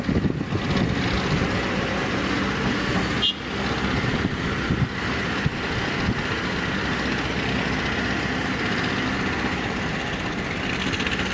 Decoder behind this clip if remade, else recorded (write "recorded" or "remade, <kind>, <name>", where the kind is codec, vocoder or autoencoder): recorded